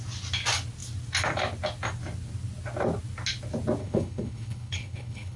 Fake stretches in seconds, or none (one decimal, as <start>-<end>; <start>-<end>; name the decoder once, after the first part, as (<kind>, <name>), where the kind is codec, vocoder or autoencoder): 3.8-5.4 (codec, HILCodec)